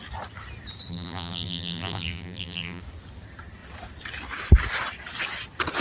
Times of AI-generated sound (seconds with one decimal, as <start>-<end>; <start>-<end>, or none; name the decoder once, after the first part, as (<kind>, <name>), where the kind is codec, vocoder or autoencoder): 0.9-2.8 (vocoder, BigVGAN v2)